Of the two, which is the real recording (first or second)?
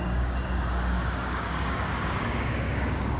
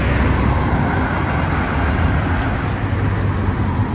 second